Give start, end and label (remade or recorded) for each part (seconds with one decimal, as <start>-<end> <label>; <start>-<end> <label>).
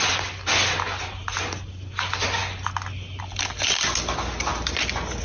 0.0-5.2 recorded